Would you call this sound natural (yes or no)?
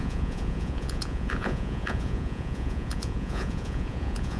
no